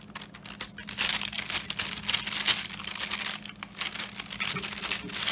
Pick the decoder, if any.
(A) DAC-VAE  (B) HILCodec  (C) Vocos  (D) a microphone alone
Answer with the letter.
D